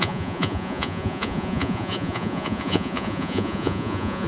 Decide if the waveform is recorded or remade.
remade